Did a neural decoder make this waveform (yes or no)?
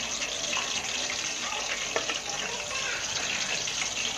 no